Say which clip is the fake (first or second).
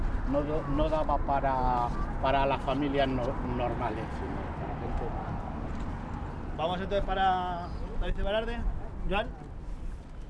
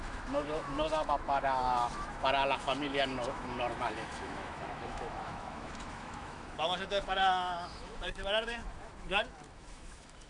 second